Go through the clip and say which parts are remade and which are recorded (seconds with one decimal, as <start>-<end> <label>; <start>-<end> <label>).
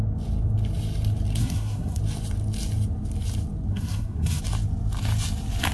0.0-1.4 recorded; 1.4-2.0 remade; 2.0-3.7 recorded; 3.7-4.4 remade; 4.4-5.7 recorded